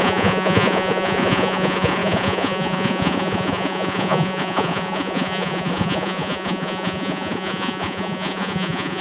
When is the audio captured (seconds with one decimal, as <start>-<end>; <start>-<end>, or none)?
none